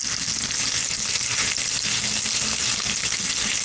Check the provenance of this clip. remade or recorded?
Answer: recorded